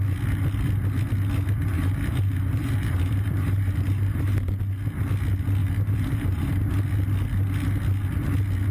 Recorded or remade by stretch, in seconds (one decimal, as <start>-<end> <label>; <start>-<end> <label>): 0.0-1.7 recorded; 1.7-4.6 remade; 4.6-5.6 recorded; 5.6-6.6 remade; 6.6-8.7 recorded